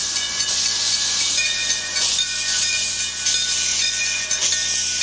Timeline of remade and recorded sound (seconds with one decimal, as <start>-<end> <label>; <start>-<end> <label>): 0.0-3.0 remade; 3.0-3.7 recorded; 3.7-4.5 remade; 4.5-5.0 recorded